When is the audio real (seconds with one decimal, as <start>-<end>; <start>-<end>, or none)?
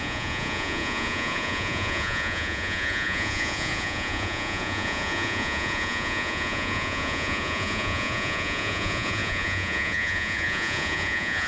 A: none